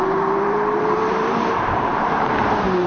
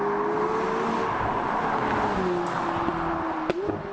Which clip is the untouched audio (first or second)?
second